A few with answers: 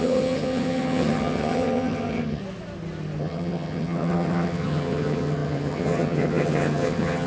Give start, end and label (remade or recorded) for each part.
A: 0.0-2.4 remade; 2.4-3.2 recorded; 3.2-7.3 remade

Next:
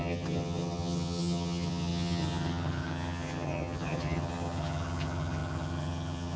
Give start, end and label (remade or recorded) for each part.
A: 0.0-6.4 remade

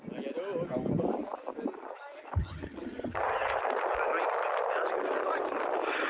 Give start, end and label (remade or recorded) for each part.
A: 0.0-2.4 recorded; 2.4-3.6 remade; 3.6-6.1 recorded

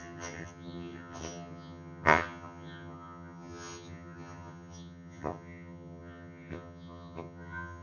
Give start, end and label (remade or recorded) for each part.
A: 0.0-7.8 remade

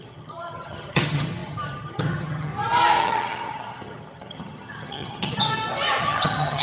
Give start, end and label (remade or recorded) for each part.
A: 0.0-2.5 remade; 2.5-3.0 recorded; 3.0-5.5 remade; 5.5-6.0 recorded; 6.0-6.6 remade